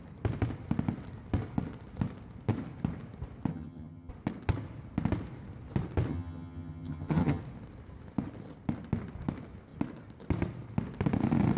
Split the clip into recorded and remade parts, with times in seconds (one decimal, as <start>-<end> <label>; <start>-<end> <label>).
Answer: 0.0-3.5 recorded; 3.5-4.1 remade; 4.1-6.1 recorded; 6.1-7.4 remade; 7.4-11.6 recorded